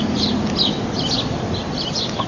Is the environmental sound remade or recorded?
recorded